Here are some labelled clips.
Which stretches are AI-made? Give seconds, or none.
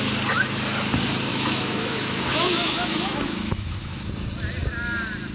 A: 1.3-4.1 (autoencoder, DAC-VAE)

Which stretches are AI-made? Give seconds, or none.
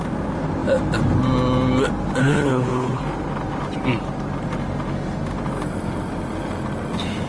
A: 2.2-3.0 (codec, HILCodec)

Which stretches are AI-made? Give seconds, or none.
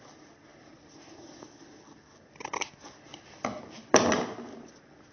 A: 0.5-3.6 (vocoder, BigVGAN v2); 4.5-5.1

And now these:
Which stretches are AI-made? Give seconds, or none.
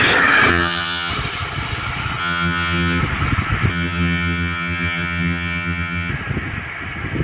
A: 0.5-1.1 (vocoder, HiFi-GAN); 2.2-3.0; 3.7-6.1